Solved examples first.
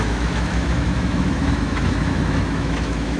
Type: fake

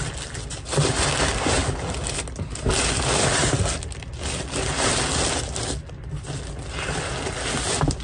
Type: real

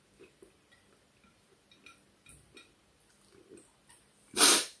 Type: real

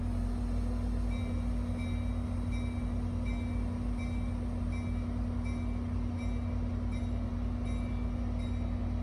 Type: real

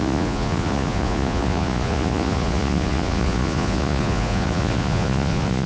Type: fake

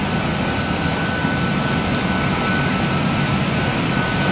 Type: real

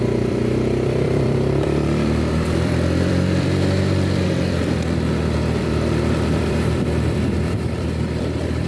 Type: fake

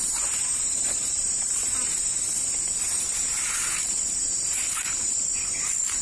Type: fake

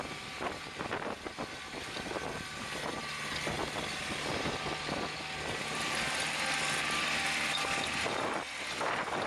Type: real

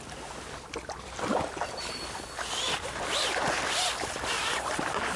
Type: real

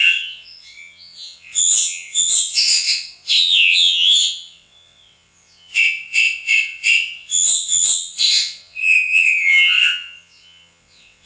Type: fake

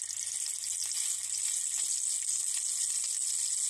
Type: real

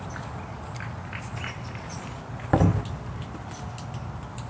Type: real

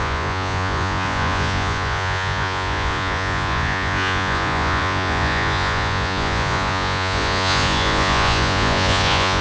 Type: fake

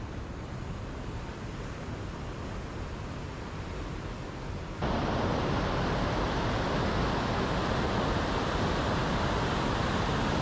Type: real